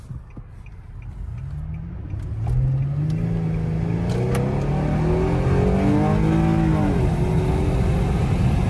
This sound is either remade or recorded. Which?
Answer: recorded